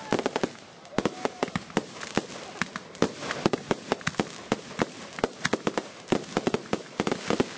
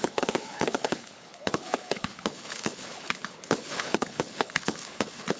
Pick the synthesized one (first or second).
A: second